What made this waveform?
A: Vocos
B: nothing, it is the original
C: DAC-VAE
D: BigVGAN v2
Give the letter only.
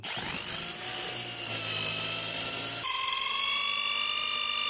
B